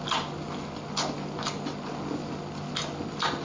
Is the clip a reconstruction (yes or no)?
no